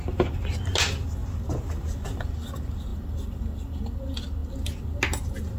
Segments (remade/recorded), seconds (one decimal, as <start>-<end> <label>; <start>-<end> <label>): 0.0-5.6 recorded